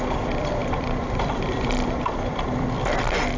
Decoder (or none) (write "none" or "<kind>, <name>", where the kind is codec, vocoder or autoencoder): vocoder, BigVGAN v2